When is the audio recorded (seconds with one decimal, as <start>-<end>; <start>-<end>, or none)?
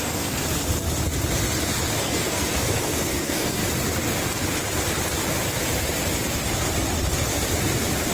0.4-2.0; 3.6-8.1